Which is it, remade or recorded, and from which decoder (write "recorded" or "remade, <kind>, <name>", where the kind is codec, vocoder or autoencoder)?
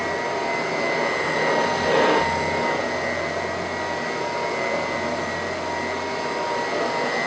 recorded